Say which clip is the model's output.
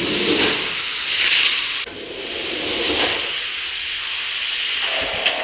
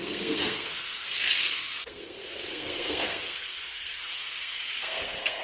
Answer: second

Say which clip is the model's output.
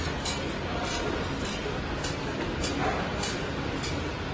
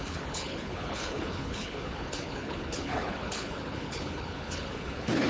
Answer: second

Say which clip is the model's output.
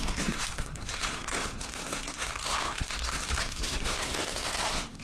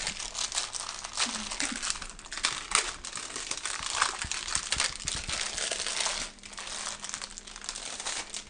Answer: first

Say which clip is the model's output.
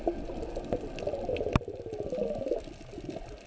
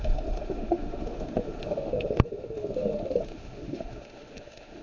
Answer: second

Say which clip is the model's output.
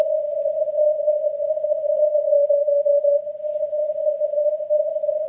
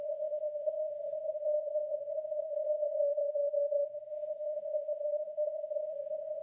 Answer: second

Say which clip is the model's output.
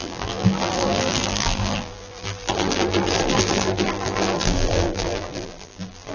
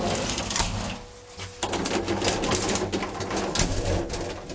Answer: first